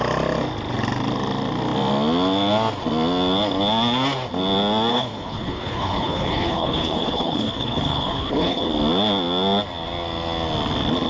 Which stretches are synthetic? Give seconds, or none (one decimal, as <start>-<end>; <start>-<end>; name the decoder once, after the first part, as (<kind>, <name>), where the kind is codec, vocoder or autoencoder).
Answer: 4.9-8.7 (codec, HILCodec)